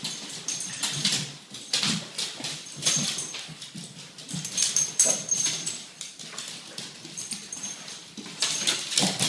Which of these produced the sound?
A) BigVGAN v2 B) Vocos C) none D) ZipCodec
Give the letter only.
A